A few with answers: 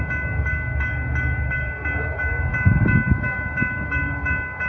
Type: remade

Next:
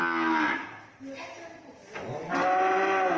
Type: recorded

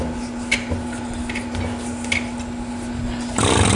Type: recorded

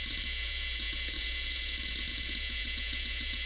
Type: remade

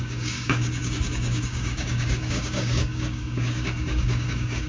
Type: remade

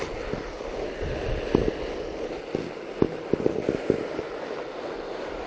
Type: recorded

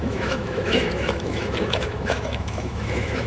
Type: remade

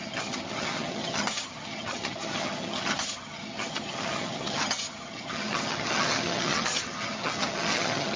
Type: remade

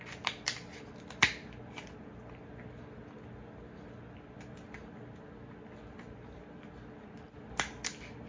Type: recorded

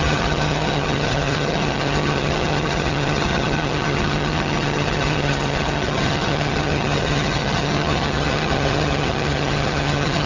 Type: remade